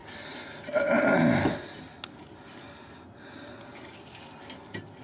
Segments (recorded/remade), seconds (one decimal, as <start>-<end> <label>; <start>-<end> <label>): 0.0-5.0 recorded